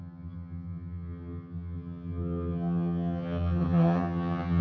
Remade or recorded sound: remade